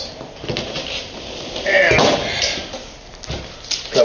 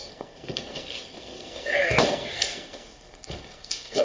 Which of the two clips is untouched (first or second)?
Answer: first